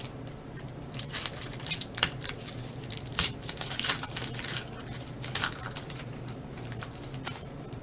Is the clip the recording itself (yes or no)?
no